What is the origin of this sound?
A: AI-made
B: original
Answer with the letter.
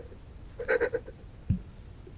B